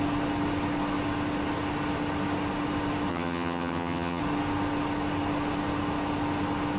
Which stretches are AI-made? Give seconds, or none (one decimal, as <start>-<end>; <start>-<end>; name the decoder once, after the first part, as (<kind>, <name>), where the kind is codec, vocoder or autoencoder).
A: 3.1-4.2 (vocoder, HiFi-GAN)